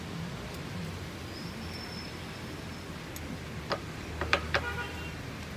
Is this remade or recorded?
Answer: recorded